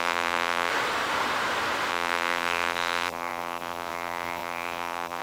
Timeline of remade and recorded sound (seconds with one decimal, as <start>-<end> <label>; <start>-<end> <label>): 0.0-0.7 remade; 0.7-1.9 recorded; 1.9-5.2 remade